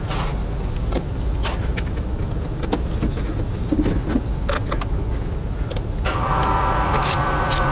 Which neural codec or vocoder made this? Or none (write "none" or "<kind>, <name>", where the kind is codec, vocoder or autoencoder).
vocoder, BigVGAN v2